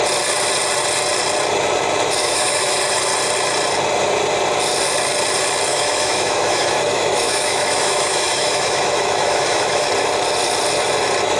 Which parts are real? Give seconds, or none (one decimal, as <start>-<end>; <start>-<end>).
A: 0.0-2.2; 2.8-5.7; 9.9-11.4